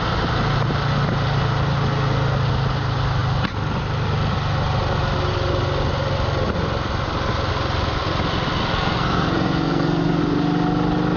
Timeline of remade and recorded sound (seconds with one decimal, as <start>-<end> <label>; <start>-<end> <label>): 0.0-8.6 recorded; 8.6-10.2 remade; 10.2-11.2 recorded